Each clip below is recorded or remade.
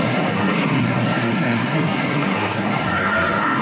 remade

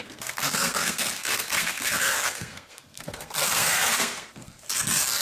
remade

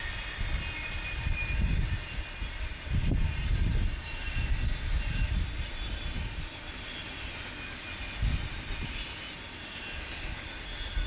recorded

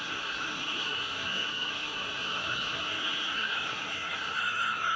remade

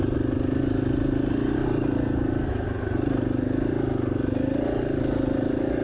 recorded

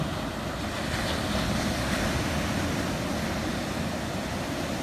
recorded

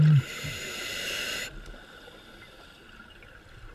recorded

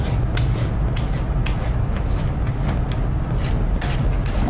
recorded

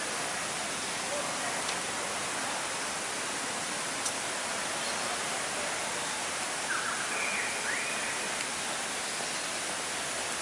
recorded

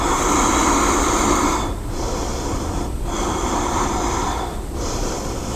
recorded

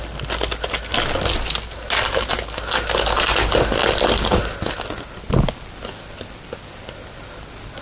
recorded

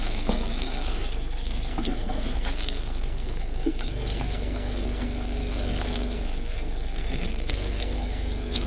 remade